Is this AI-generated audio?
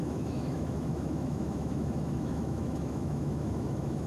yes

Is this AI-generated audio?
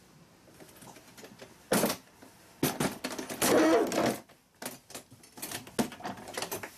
no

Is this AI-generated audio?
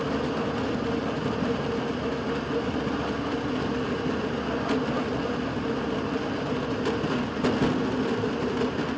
no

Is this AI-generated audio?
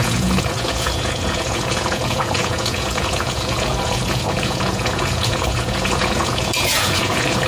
yes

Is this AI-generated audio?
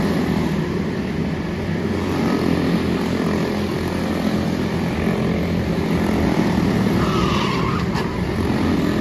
no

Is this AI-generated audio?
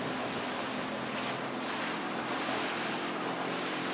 no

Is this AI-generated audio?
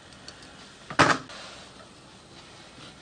no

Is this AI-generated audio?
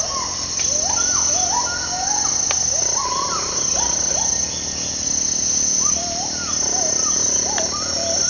no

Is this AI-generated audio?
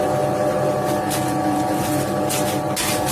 no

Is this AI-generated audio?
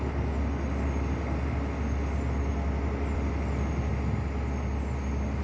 no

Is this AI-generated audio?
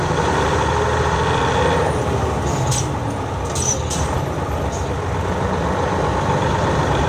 no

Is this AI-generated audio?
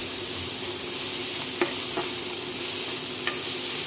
no